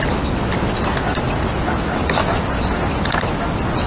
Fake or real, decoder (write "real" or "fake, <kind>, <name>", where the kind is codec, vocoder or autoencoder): real